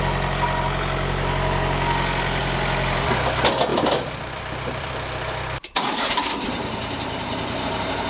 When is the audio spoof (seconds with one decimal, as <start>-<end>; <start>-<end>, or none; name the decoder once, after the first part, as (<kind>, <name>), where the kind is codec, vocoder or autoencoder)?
2.4-3.1 (vocoder, BigVGAN v2); 3.7-7.6